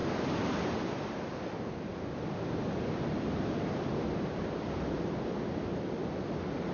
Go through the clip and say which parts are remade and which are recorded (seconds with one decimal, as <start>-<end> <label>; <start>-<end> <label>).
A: 0.0-6.7 recorded